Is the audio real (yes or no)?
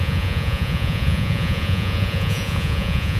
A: no